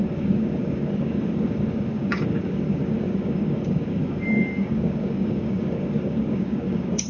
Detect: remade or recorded remade